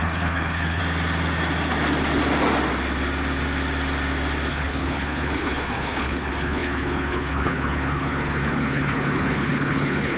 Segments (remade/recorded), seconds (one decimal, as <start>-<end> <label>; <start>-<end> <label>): 0.0-0.8 remade; 0.8-4.5 recorded; 4.5-10.2 remade

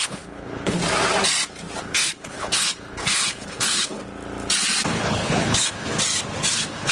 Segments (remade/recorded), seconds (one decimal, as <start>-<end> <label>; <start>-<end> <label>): 0.0-0.8 remade; 0.8-1.8 recorded; 1.8-4.0 remade; 4.0-4.9 recorded; 4.9-5.9 remade; 5.9-6.5 recorded; 6.5-6.9 remade

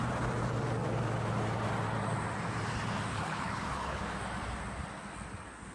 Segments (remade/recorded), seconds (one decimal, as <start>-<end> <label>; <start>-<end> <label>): 0.0-3.1 recorded; 3.1-4.0 remade; 4.0-5.7 recorded

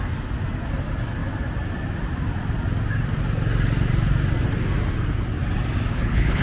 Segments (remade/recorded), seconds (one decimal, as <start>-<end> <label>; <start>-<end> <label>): 0.0-5.9 recorded; 5.9-6.4 remade

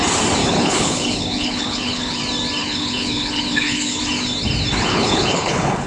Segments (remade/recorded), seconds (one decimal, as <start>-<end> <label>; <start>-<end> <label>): 0.0-0.4 recorded; 0.4-2.2 remade; 2.2-2.6 recorded; 2.6-4.0 remade; 4.0-4.9 recorded; 4.9-5.9 remade

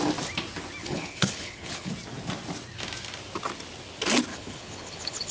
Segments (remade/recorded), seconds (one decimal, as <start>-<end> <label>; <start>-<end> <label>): 0.0-0.8 recorded; 0.8-1.9 remade; 1.9-4.3 recorded; 4.3-5.3 remade

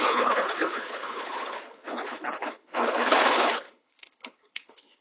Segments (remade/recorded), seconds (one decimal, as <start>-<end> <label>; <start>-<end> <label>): 0.0-5.0 remade